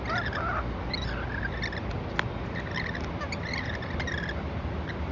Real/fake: real